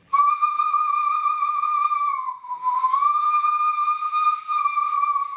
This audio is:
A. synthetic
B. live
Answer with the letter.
A